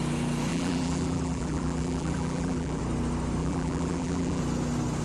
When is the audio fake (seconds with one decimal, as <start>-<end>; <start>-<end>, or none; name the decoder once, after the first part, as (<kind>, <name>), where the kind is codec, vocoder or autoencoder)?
0.5-2.8 (vocoder, BigVGAN v2); 3.4-4.4